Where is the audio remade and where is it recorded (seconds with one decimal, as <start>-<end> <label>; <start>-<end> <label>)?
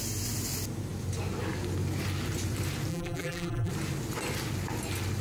0.0-2.9 recorded; 2.9-3.7 remade; 3.7-5.2 recorded